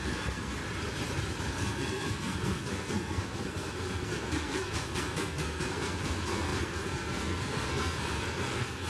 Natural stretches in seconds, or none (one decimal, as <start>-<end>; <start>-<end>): 0.6-1.5